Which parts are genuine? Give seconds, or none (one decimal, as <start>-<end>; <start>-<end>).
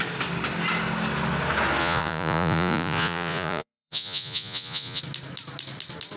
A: 0.0-1.8; 5.0-6.2